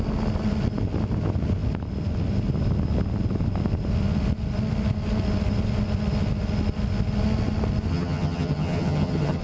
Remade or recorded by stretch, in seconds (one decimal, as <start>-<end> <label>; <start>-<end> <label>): 0.0-7.9 recorded; 7.9-9.4 remade